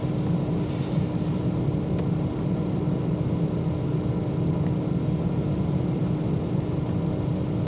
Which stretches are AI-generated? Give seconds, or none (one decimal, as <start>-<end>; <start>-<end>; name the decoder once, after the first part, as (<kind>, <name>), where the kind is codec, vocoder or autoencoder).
none